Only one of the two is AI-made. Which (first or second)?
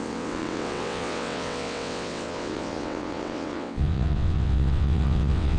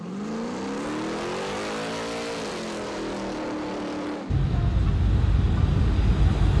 first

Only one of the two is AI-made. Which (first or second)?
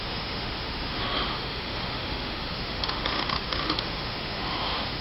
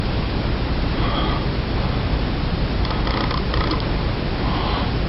first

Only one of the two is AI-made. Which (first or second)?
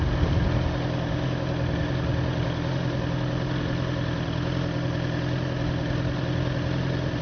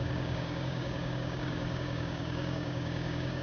second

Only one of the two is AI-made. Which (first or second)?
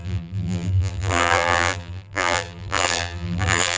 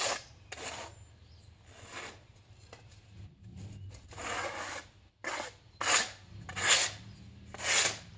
first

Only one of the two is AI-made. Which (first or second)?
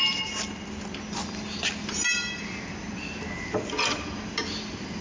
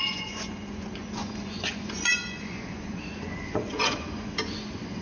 second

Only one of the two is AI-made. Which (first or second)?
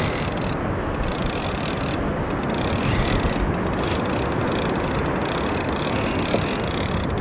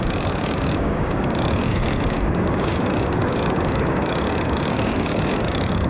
second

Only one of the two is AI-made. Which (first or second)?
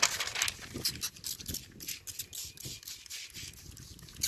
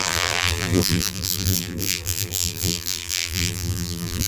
second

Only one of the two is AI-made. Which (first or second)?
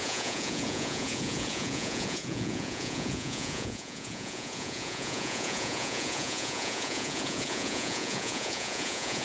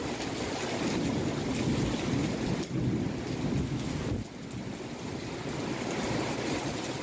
first